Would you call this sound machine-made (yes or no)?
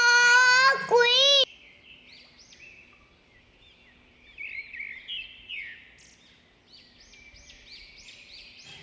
no